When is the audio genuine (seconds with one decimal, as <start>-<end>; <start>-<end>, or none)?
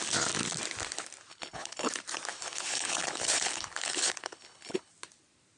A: 0.0-1.3; 1.9-2.3; 4.9-5.6